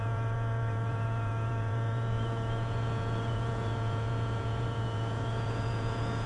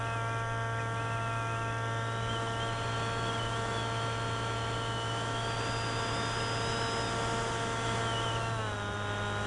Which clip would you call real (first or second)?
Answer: second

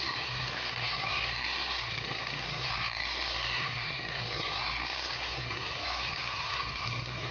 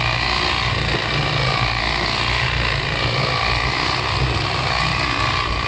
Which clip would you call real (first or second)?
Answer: second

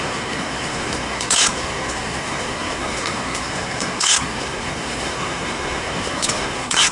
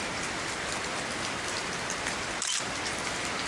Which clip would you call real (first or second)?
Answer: second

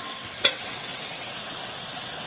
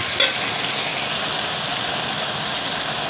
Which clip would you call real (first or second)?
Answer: second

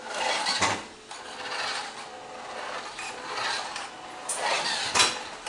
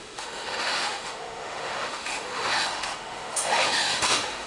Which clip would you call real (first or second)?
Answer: first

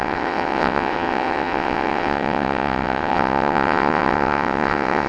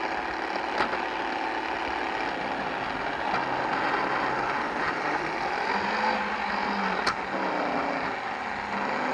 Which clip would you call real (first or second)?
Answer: second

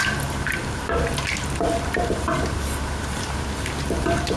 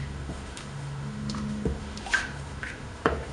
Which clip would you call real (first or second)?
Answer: first